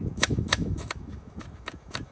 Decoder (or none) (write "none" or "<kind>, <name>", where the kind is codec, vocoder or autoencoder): autoencoder, DAC-VAE